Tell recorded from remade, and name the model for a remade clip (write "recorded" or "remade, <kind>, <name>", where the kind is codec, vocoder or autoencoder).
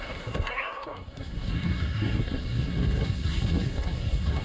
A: remade, codec, SNAC